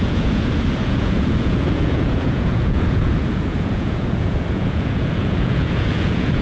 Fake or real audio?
fake